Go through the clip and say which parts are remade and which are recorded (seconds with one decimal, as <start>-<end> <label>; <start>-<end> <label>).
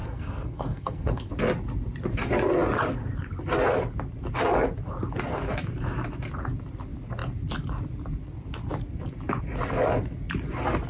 0.0-1.3 remade; 1.3-10.9 recorded